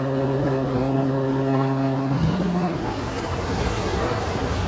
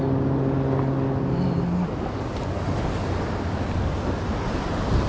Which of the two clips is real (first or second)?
second